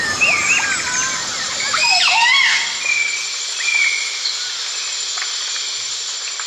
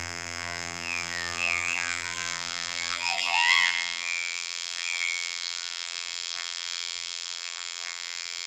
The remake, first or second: second